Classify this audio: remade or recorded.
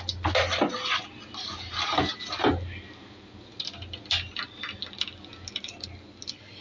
recorded